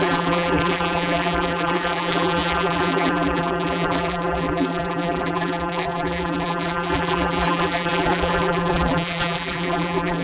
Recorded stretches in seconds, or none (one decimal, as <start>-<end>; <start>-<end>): none

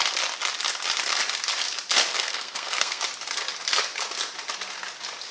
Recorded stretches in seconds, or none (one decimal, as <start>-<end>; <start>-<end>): 0.0-2.1; 3.0-5.3

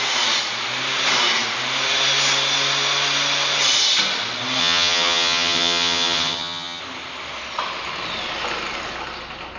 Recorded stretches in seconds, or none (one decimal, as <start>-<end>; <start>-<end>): 0.0-4.6; 6.8-9.6

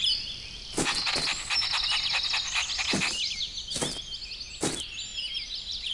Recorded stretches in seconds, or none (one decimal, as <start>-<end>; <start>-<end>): 0.0-5.9

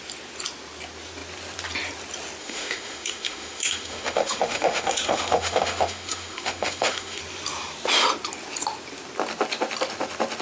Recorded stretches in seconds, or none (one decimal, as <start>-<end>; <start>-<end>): 0.0-2.4; 7.2-10.4

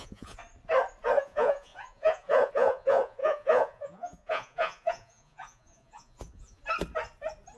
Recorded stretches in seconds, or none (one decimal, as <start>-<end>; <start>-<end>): 0.4-1.2; 6.6-7.6

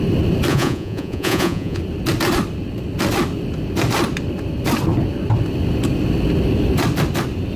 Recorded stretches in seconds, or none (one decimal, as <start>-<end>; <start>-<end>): 0.0-0.5; 1.8-7.6